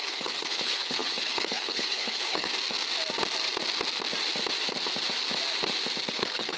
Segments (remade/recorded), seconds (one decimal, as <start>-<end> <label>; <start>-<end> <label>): 0.0-2.5 remade; 2.5-6.1 recorded; 6.1-6.6 remade